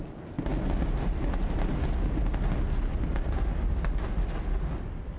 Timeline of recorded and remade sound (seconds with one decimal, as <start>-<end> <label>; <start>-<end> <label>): 0.0-5.2 recorded